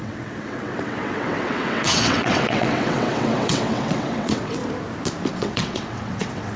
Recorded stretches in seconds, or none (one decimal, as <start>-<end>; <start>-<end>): 4.6-5.3